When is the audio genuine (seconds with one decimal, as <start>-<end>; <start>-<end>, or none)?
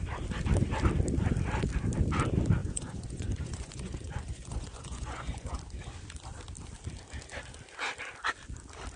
0.0-2.6; 5.6-9.0